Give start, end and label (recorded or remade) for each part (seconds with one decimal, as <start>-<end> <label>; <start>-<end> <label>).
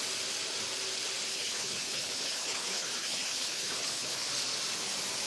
0.0-1.3 recorded; 1.3-4.3 remade; 4.3-5.3 recorded